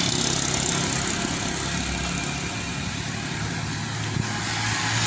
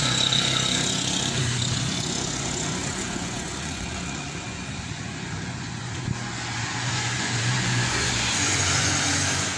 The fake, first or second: second